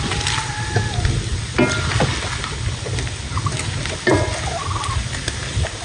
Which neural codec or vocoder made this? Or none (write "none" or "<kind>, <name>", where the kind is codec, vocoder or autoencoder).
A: none